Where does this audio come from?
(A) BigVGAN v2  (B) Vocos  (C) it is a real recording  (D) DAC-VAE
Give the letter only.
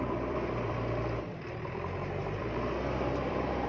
A